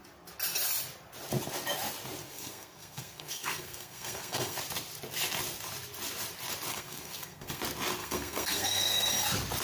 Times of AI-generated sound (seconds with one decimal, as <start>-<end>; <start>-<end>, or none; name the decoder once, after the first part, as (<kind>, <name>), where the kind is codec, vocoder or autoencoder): 2.2-4.6 (codec, SNAC); 6.7-7.6; 8.0-9.1